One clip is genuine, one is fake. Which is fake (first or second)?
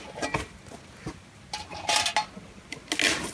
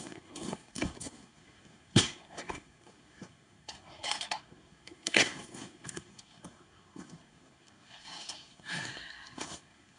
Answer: second